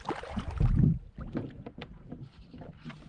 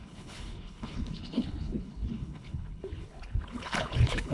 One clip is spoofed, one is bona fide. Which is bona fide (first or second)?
first